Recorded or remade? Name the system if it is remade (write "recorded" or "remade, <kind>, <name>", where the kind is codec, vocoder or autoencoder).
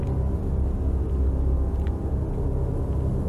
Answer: recorded